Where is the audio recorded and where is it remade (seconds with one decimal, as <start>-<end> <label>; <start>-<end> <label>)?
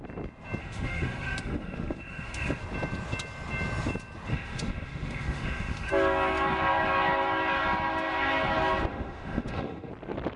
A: 0.0-0.6 recorded; 0.6-2.6 remade; 2.6-4.3 recorded; 4.3-5.9 remade; 5.9-8.9 recorded; 8.9-9.9 remade; 9.9-10.4 recorded